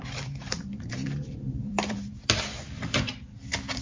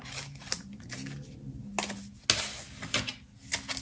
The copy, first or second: first